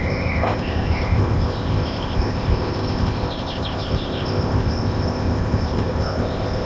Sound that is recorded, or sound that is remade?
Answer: remade